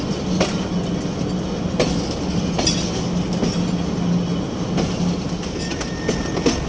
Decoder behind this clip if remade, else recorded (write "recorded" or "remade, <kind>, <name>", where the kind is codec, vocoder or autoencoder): recorded